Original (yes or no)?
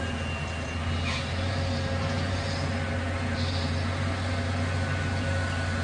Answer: yes